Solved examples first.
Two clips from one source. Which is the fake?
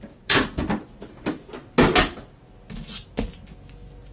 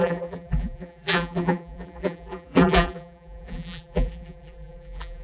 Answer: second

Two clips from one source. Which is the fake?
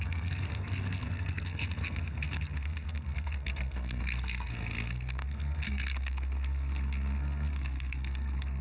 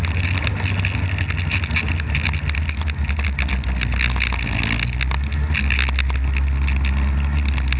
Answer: first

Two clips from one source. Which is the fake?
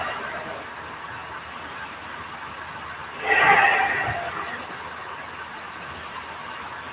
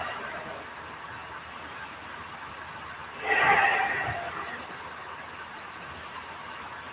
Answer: second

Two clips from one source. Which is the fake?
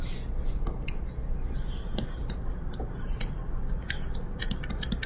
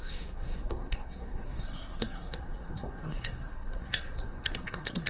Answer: second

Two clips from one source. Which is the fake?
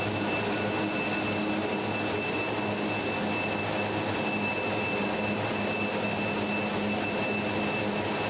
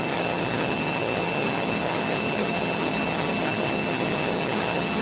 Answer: second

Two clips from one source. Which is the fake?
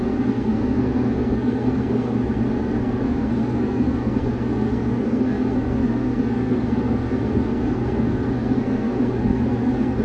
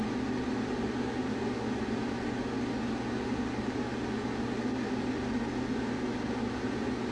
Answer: first